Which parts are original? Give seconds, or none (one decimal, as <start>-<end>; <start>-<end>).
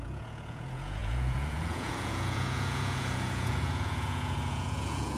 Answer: none